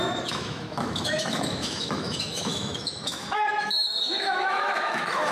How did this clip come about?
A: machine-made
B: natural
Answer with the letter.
A